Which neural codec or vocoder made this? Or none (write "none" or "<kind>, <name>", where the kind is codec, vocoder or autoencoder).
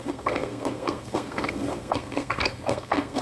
codec, SNAC